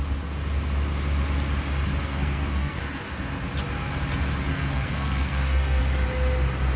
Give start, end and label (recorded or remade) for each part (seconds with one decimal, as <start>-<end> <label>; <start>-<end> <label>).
0.0-2.0 recorded; 2.0-2.8 remade; 2.8-4.5 recorded; 4.5-5.8 remade; 5.8-6.8 recorded